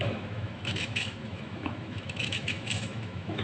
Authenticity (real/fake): fake